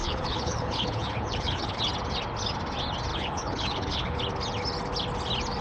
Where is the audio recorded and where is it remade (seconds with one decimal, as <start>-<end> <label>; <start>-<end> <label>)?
0.0-1.9 remade; 1.9-3.1 recorded; 3.1-4.2 remade; 4.2-5.6 recorded